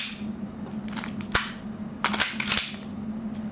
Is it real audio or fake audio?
real